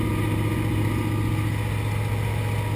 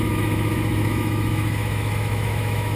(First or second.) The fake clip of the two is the second